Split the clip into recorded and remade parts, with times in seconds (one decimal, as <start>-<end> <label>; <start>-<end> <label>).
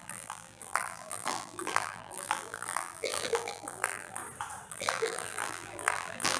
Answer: 0.0-4.2 remade; 4.2-4.7 recorded; 4.7-6.4 remade